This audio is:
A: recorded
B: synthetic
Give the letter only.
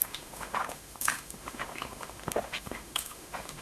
B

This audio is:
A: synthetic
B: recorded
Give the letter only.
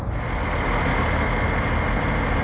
B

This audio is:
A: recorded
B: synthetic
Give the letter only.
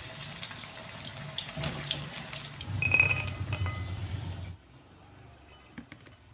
A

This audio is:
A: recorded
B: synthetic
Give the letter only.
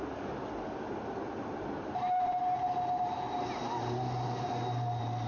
A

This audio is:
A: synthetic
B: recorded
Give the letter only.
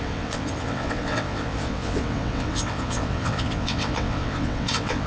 A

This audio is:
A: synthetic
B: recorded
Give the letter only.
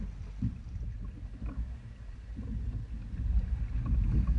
B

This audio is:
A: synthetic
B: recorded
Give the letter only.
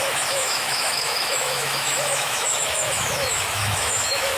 A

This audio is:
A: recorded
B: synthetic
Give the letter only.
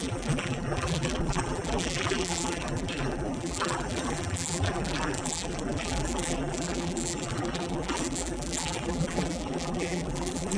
B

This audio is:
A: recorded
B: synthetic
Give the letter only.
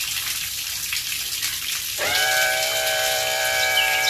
B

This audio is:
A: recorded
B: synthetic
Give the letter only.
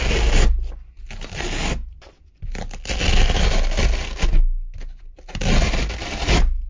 A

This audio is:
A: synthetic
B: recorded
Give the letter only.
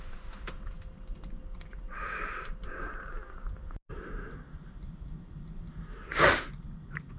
B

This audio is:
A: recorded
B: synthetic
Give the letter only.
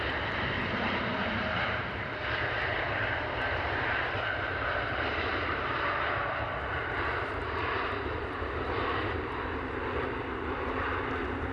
B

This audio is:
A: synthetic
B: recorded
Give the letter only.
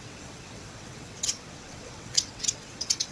A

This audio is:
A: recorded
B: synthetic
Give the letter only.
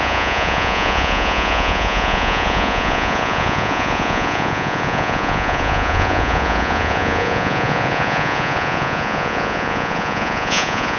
B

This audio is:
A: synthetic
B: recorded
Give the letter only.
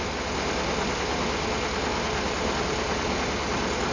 B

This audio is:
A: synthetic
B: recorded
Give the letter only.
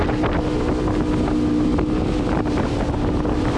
B